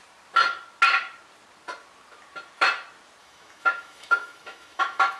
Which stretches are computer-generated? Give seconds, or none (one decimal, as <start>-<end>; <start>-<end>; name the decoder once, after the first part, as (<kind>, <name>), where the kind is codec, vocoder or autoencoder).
3.2-5.2 (autoencoder, DAC-VAE)